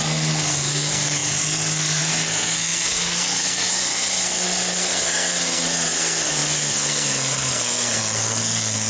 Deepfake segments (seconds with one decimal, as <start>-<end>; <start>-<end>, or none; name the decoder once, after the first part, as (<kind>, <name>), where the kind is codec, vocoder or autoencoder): 0.0-8.9 (codec, SNAC)